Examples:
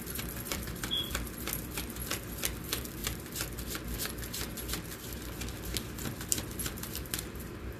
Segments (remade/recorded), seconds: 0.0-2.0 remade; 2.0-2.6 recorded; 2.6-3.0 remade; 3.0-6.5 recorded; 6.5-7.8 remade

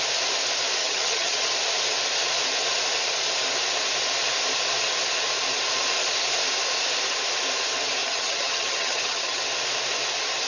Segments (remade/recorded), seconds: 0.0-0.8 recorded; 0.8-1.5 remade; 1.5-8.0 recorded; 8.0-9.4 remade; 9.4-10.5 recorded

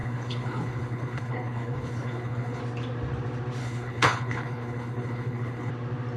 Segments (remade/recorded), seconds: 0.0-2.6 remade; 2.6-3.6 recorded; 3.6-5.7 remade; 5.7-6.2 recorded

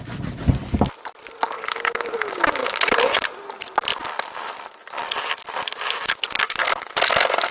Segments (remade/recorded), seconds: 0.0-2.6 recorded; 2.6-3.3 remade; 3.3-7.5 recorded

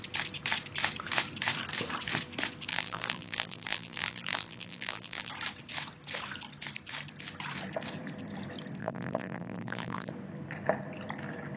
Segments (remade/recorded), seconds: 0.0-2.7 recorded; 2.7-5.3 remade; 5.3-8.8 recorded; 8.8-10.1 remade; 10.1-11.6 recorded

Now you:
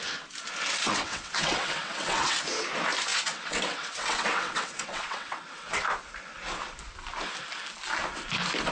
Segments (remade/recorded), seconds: 0.0-0.8 recorded; 0.8-2.4 remade; 2.4-3.1 recorded; 3.1-5.9 remade; 5.9-8.7 recorded

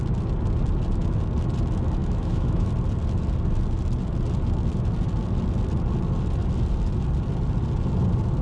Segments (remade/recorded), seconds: 0.0-2.0 recorded; 2.0-2.7 remade; 2.7-8.4 recorded